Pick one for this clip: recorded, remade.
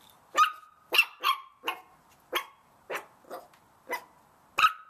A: recorded